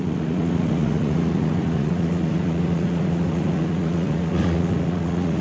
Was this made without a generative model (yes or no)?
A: no